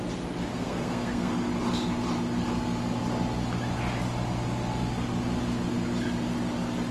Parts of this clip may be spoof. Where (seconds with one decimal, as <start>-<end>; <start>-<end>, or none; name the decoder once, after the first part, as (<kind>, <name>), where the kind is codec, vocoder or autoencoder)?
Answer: 0.5-1.3 (codec, SNAC)